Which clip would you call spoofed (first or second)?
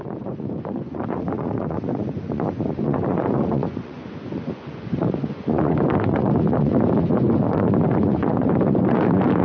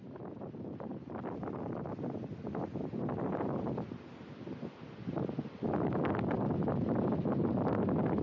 first